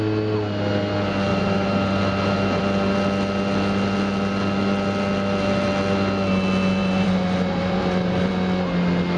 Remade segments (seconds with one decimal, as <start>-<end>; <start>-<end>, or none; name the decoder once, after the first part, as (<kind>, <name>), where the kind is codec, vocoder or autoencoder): 1.3-2.6 (vocoder, BigVGAN v2); 6.8-8.3